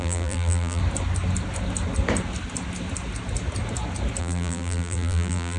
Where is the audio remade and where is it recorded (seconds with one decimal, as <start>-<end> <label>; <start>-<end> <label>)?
0.0-0.8 remade; 0.8-4.2 recorded; 4.2-5.6 remade